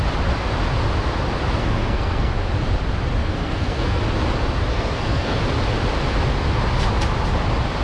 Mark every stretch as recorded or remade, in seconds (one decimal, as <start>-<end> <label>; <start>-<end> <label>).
0.0-1.6 recorded; 1.6-2.3 remade; 2.3-3.2 recorded; 3.2-4.0 remade; 4.0-4.7 recorded; 4.7-5.4 remade; 5.4-7.8 recorded